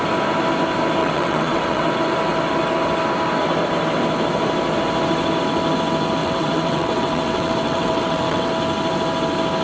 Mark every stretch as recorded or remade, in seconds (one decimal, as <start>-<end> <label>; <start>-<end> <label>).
0.0-1.0 recorded; 1.0-1.9 remade; 1.9-6.2 recorded; 6.2-8.5 remade; 8.5-9.6 recorded

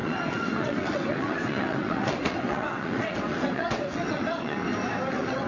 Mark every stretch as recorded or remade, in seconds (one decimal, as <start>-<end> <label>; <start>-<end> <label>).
0.0-4.6 remade; 4.6-5.1 recorded; 5.1-5.5 remade